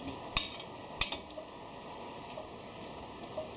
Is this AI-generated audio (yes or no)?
no